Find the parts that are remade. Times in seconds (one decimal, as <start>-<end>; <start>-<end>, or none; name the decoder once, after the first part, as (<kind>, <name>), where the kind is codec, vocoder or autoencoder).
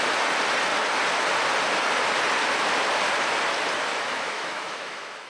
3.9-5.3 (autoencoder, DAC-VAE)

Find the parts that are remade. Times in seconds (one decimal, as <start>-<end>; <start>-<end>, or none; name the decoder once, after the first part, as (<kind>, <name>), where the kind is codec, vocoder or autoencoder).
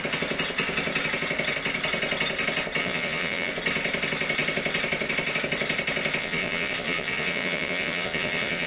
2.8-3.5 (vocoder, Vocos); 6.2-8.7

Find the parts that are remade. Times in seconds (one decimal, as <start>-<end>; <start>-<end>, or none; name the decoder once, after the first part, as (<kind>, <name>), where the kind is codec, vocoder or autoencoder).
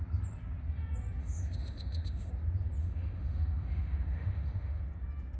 1.2-2.3 (autoencoder, DAC-VAE); 2.8-4.8